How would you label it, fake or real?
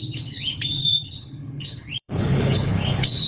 fake